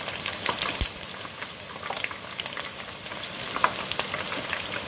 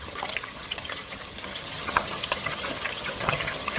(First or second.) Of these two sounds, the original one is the first